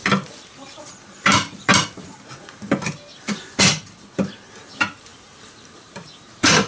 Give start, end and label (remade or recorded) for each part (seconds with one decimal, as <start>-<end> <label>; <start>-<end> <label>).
0.0-1.1 recorded; 1.1-1.7 remade; 1.7-4.6 recorded; 4.6-6.7 remade